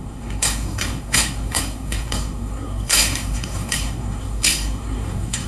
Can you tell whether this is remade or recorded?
remade